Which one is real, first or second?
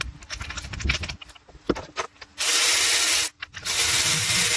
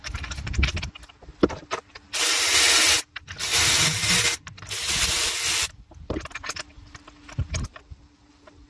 first